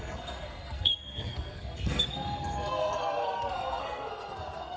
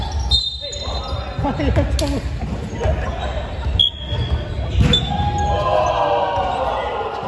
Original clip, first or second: second